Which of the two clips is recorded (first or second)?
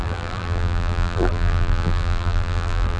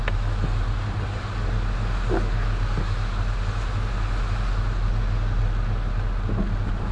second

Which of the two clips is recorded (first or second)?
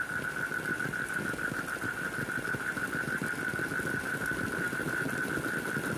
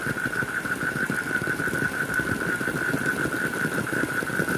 first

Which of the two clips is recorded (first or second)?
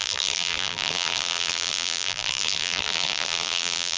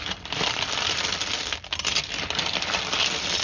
second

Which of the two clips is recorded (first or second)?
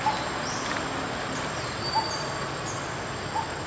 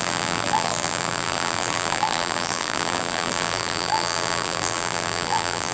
first